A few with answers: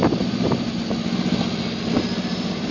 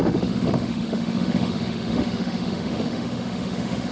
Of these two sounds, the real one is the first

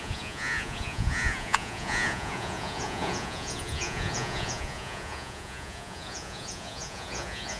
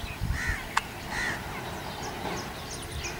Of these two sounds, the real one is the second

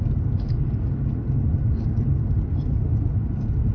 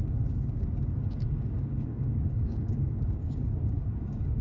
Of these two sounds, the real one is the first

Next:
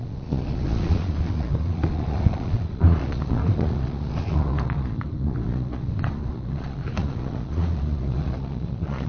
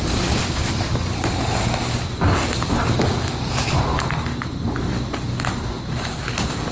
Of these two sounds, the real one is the second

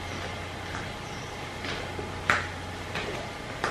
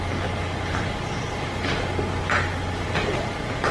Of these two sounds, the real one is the first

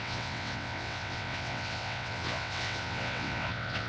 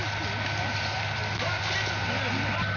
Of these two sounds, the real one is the second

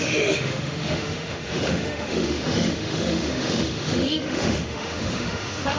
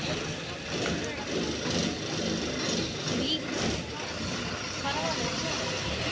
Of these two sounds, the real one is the second